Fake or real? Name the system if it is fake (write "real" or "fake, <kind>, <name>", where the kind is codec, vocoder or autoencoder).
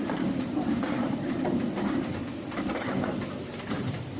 fake, vocoder, BigVGAN v2